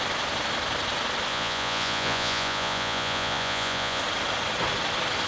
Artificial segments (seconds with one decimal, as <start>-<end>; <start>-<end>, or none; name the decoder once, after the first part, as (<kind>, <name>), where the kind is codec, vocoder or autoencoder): 1.3-4.0 (vocoder, Vocos)